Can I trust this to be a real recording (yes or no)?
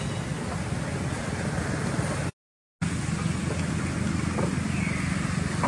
yes